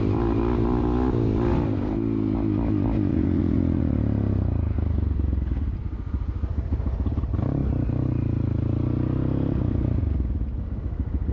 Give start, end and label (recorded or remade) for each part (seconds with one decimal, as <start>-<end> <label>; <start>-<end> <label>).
0.0-3.1 recorded; 3.1-4.0 remade; 4.0-11.3 recorded